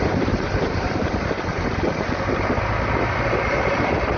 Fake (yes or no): yes